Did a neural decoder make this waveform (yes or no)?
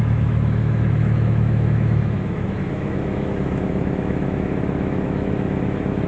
yes